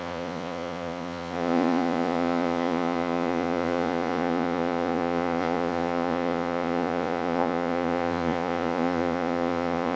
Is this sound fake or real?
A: fake